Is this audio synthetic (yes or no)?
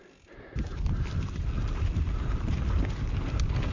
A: no